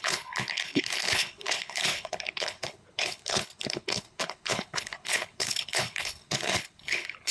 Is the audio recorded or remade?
remade